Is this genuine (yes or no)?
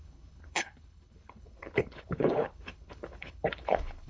no